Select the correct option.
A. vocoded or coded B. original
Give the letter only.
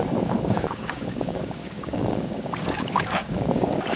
A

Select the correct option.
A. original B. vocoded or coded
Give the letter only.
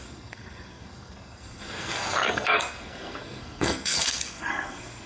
B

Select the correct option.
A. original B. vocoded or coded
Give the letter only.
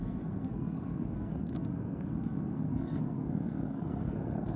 B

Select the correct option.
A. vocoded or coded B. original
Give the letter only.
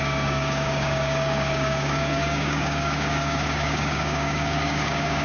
A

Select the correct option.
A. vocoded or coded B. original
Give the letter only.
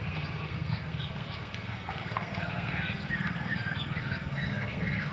A